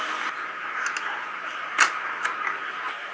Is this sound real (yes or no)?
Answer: yes